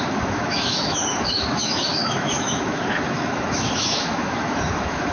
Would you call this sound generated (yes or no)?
yes